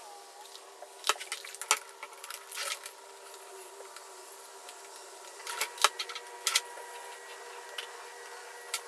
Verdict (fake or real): real